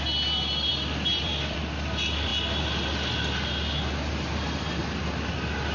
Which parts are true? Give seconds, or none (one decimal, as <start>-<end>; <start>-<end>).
0.0-0.7; 1.6-5.7